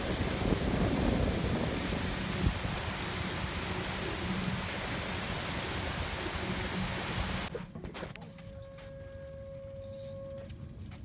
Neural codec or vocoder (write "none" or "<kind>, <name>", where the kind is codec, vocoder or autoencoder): none